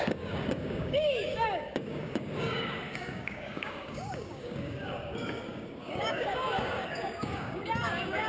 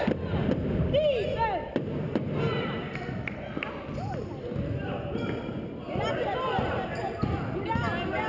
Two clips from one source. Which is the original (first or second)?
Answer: second